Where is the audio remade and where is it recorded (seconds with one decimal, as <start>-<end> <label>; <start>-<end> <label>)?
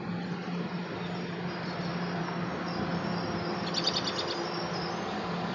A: 0.0-1.9 recorded; 1.9-2.4 remade; 2.4-5.5 recorded